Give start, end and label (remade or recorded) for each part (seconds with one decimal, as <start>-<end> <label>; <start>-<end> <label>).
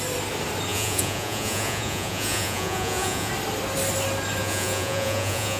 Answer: 0.0-0.7 recorded; 0.7-3.3 remade; 3.3-4.4 recorded; 4.4-5.6 remade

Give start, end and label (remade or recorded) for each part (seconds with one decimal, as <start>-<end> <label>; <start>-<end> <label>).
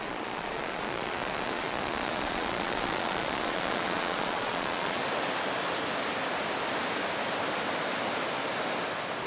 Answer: 0.0-5.0 remade; 5.0-9.3 recorded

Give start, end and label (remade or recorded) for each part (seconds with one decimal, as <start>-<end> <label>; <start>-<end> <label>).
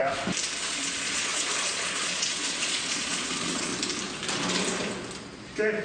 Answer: 0.0-0.7 recorded; 0.7-3.7 remade; 3.7-5.8 recorded